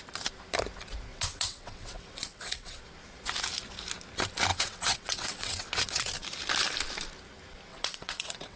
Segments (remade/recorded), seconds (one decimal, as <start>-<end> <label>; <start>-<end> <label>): 0.0-1.1 recorded; 1.1-2.8 remade; 2.8-4.5 recorded; 4.5-6.1 remade; 6.1-7.7 recorded; 7.7-8.6 remade